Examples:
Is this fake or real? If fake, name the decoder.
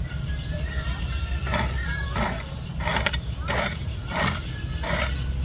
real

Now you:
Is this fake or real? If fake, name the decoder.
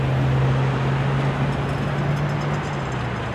real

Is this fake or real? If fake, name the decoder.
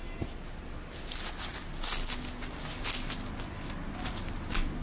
real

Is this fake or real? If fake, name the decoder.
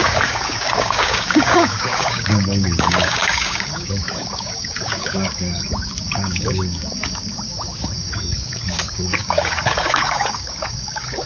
fake, codec, DAC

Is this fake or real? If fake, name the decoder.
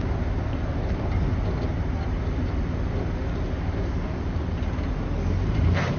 real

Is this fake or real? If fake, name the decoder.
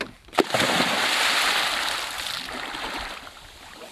real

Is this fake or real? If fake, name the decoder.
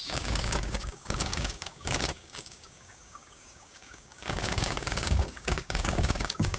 fake, codec, DAC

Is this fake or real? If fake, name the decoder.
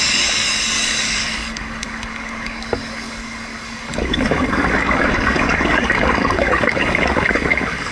fake, codec, DAC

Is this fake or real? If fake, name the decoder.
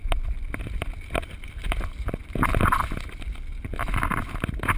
real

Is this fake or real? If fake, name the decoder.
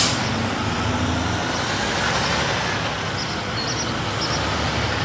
real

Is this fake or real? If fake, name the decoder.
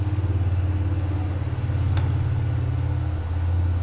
real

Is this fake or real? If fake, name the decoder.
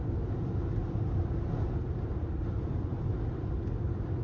real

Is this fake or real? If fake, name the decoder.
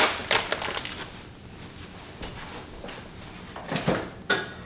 real